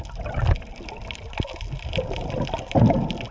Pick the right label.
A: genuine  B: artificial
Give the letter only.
A